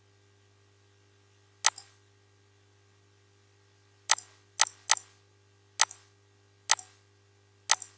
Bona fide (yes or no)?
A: yes